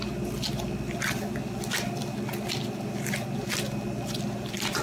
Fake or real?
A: real